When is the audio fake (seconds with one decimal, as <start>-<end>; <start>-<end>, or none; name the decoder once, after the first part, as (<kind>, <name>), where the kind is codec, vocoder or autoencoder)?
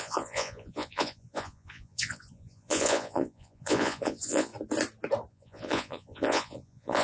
0.0-4.5 (vocoder, Vocos); 5.3-7.0